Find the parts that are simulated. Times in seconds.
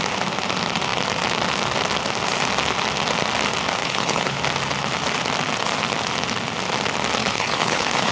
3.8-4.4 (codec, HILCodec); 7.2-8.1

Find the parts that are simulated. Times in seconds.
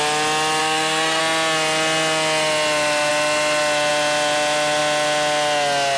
0.6-1.2 (codec, SNAC)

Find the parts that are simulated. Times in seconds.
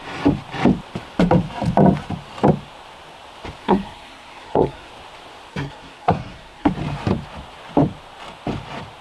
3.6-4.9 (codec, SNAC); 5.5-6.7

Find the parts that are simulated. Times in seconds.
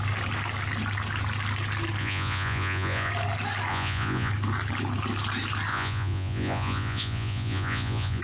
2.0-3.1 (vocoder, Vocos); 3.7-4.3; 5.7-8.2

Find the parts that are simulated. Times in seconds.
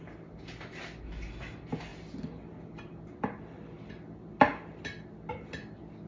none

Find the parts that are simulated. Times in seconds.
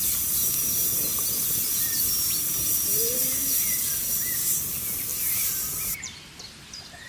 0.0-1.1 (vocoder, BigVGAN v2); 2.1-7.1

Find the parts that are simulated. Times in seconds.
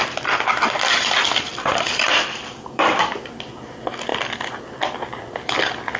1.5-3.5 (vocoder, BigVGAN v2); 4.1-5.2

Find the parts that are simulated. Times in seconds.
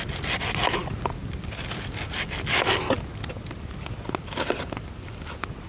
none